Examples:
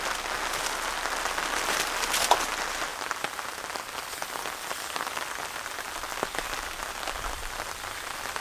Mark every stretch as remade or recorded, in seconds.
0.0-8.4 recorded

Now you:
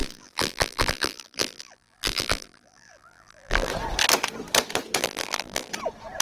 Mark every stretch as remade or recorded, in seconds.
0.0-3.7 remade; 3.7-5.0 recorded; 5.0-5.7 remade; 5.7-6.2 recorded

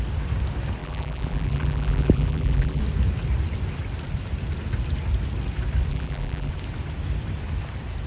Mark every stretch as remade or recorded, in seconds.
0.0-0.8 recorded; 0.8-2.8 remade; 2.8-5.9 recorded; 5.9-6.5 remade; 6.5-8.1 recorded